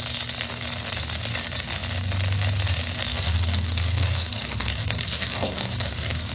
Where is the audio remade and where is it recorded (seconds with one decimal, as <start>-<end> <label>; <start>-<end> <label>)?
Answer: 0.0-3.1 recorded; 3.1-6.3 remade